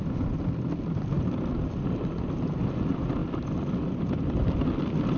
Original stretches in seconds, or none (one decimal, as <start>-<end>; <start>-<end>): 0.0-5.2